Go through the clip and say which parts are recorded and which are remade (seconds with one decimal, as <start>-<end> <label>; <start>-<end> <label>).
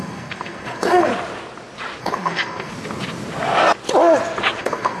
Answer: 0.0-1.1 remade; 1.1-2.0 recorded; 2.0-2.7 remade; 2.7-4.6 recorded; 4.6-5.0 remade